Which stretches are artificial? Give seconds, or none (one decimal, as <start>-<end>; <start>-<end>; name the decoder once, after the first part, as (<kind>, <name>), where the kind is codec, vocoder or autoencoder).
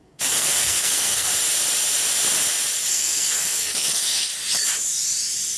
0.0-1.3 (codec, SNAC); 2.9-4.3